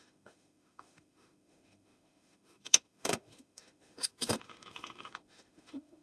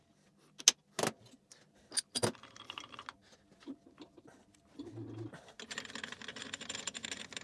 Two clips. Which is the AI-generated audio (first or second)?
first